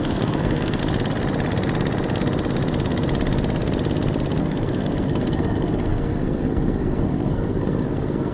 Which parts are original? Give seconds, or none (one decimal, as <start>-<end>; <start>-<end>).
0.8-4.4